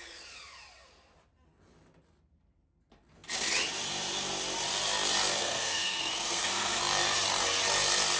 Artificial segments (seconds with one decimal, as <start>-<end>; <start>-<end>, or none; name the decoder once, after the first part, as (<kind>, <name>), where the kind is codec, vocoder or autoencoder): 5.4-6.8 (codec, SNAC)